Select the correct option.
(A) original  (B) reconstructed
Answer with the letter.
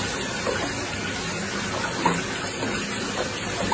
A